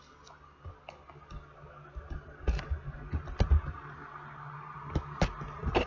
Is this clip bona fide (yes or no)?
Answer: yes